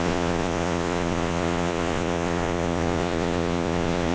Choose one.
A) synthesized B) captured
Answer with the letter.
A